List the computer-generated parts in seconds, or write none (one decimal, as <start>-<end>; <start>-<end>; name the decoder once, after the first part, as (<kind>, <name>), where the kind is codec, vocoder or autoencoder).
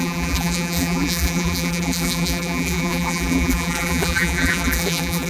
0.0-5.3 (vocoder, BigVGAN v2)